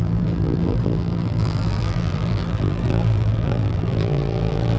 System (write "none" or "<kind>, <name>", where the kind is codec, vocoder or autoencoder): vocoder, BigVGAN v2